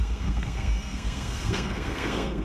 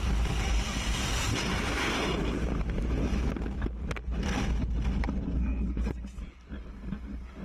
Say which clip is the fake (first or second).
first